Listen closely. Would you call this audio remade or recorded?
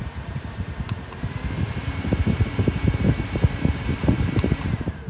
remade